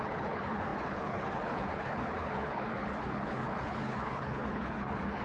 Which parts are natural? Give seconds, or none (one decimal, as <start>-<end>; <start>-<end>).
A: none